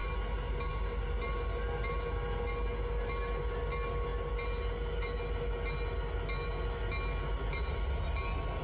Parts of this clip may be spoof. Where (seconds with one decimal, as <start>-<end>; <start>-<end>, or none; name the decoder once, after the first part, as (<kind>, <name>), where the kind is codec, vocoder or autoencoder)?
none